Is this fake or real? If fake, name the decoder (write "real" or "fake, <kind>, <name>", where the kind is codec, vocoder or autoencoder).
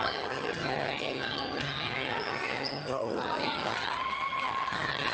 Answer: fake, vocoder, HiFi-GAN